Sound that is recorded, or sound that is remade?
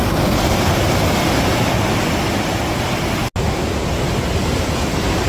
recorded